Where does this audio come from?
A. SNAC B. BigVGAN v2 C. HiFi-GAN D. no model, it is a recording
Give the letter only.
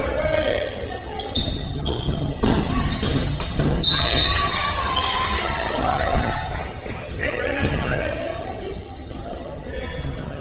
C